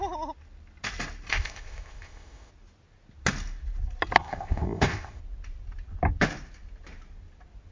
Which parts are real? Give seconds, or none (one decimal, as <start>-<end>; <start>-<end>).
0.0-1.3; 2.5-4.2; 5.2-7.7